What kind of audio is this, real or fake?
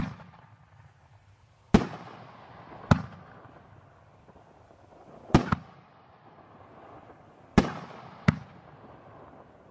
real